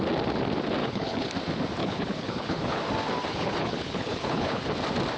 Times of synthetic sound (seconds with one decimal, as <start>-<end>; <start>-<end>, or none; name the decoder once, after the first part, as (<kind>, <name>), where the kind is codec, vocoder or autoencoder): 0.8-1.3 (codec, HILCodec); 1.8-2.8; 3.3-4.6